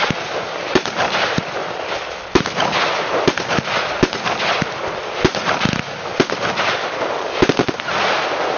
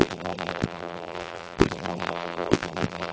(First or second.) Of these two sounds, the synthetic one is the second